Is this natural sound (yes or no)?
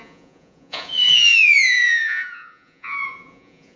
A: no